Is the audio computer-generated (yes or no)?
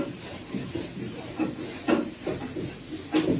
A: no